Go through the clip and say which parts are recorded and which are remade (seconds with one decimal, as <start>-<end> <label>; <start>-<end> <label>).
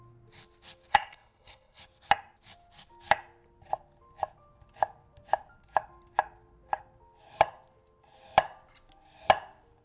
0.0-0.9 recorded; 0.9-1.8 remade; 1.8-9.8 recorded